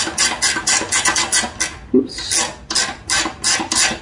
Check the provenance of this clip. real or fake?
real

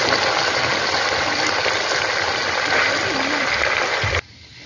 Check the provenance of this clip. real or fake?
real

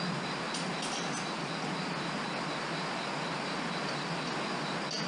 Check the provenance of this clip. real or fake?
real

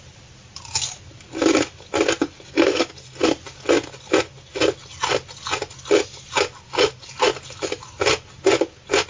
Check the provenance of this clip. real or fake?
real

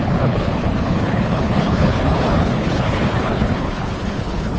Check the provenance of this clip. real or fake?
fake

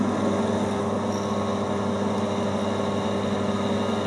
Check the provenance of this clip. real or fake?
real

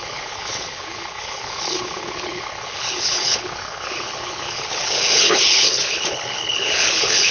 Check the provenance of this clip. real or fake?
fake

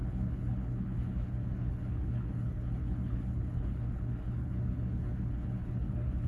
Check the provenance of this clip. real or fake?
fake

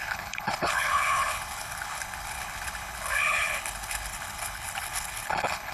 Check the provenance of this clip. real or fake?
fake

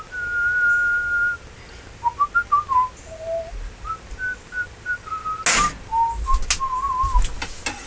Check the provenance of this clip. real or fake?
real